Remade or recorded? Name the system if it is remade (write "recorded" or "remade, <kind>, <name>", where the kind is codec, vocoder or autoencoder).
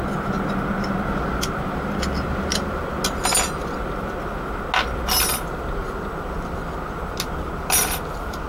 recorded